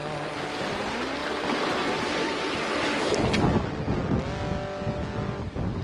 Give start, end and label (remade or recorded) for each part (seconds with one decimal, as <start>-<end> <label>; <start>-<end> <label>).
0.0-5.8 recorded